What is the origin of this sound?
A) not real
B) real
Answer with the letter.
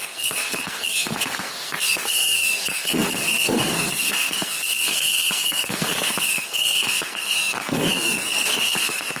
A